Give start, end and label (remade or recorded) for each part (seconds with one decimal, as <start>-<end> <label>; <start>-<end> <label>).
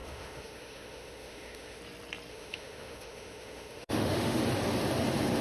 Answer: 0.0-1.8 remade; 1.8-2.3 recorded; 2.3-4.4 remade; 4.4-5.4 recorded